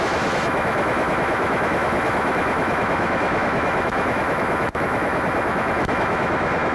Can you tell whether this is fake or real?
fake